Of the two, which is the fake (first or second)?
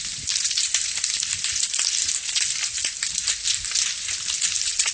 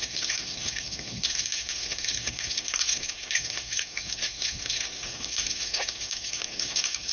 second